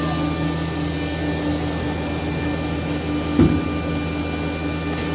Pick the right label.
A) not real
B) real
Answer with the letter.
B